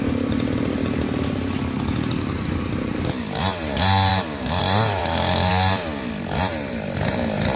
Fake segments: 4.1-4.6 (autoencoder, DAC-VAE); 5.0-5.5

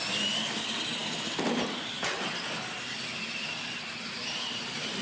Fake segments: none